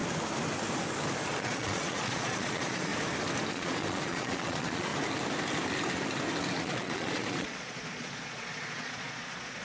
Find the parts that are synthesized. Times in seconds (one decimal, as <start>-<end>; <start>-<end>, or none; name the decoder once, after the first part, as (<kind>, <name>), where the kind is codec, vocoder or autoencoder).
1.3-2.9 (vocoder, Vocos); 3.5-4.9; 6.6-9.6